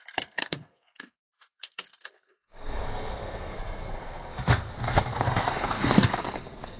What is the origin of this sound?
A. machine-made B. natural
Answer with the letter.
A